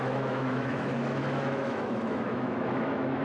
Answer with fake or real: fake